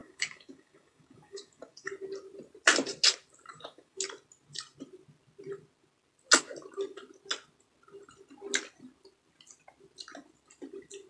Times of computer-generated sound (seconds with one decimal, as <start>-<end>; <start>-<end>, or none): 0.0-1.9; 3.5-4.0